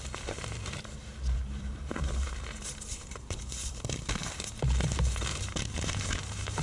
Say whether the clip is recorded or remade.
remade